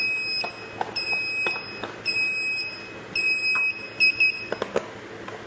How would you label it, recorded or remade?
recorded